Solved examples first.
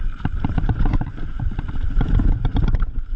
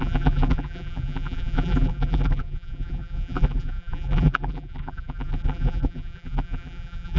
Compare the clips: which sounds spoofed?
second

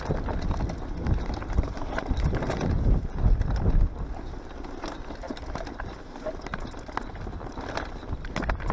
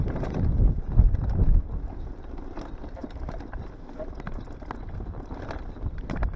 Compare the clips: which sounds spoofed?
second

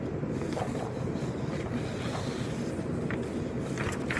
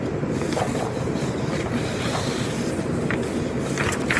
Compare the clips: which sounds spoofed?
second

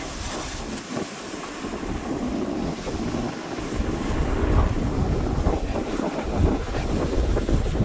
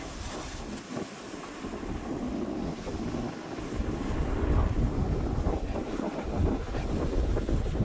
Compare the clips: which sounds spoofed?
first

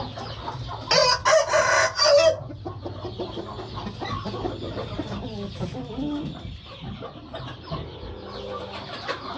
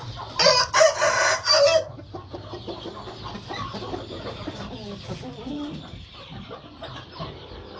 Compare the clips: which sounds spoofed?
second